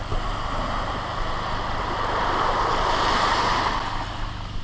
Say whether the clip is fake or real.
real